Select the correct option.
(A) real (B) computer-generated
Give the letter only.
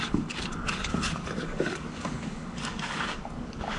B